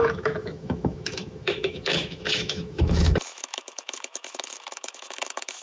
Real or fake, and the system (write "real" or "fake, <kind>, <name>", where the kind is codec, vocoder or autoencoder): fake, autoencoder, DAC-VAE